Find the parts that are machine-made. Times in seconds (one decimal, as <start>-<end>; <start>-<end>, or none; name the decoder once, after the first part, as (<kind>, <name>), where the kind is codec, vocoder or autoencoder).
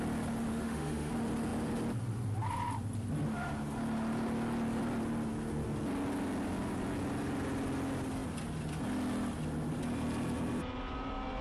0.5-1.1 (autoencoder, DAC-VAE)